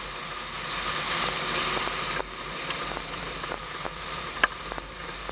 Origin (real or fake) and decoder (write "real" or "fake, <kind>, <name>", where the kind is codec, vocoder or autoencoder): real